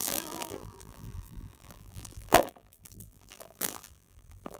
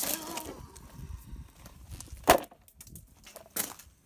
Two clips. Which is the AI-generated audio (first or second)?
first